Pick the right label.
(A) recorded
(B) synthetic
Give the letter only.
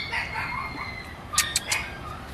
A